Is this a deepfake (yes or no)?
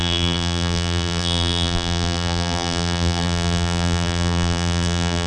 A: yes